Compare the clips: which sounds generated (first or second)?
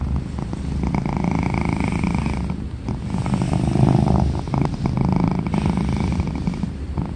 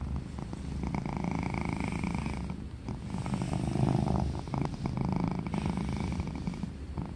first